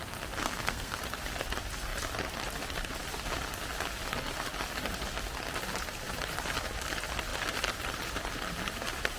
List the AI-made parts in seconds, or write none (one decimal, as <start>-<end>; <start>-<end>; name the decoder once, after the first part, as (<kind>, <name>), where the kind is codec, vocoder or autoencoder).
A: 0.4-1.0 (codec, SNAC)